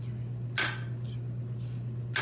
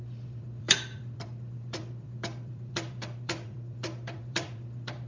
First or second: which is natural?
first